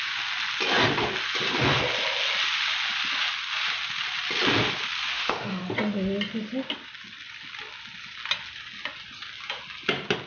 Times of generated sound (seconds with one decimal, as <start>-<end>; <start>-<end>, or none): 5.1-5.6